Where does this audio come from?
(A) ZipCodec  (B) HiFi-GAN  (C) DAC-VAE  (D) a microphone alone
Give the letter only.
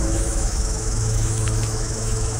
C